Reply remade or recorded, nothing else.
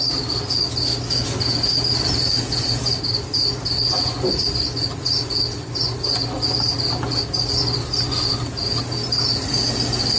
recorded